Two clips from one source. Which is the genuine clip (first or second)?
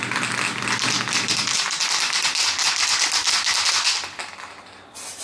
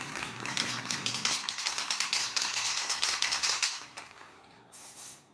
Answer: first